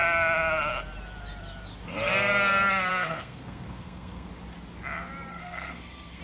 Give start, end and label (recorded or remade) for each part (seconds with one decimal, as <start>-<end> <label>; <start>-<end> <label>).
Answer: 0.0-2.9 recorded; 2.9-4.3 remade; 4.3-5.3 recorded; 5.3-6.2 remade